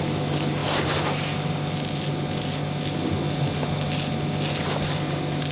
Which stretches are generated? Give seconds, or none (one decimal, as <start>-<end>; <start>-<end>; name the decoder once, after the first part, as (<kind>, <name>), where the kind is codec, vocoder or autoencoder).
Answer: none